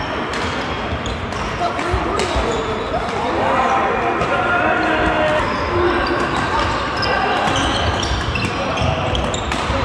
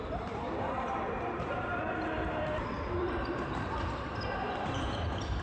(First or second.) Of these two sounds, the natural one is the first